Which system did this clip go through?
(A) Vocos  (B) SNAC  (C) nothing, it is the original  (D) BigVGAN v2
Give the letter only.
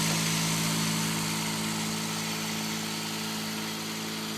C